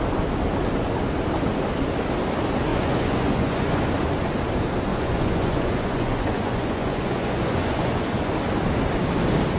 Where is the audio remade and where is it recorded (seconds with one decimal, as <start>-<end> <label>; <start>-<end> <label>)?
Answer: 0.0-2.7 recorded; 2.7-3.8 remade; 3.8-4.9 recorded; 4.9-8.3 remade; 8.3-9.6 recorded